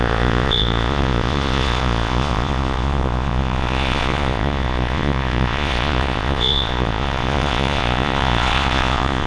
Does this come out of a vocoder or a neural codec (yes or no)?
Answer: yes